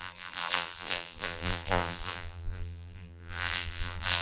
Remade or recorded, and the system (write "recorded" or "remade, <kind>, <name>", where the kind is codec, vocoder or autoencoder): remade, vocoder, BigVGAN v2